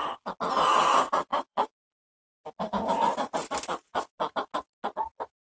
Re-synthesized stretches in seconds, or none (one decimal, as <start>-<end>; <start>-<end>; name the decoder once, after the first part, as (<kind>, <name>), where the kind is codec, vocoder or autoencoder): 1.3-2.4 (codec, DAC)